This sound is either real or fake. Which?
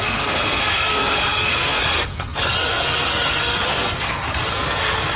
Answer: fake